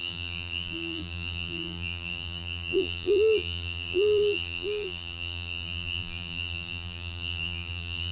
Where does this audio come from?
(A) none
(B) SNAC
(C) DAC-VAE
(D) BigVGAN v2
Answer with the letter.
D